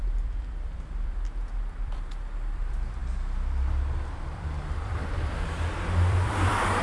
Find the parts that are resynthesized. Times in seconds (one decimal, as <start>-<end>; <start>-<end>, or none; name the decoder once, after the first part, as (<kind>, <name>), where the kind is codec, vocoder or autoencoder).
0.0-3.0 (vocoder, BigVGAN v2); 4.2-6.8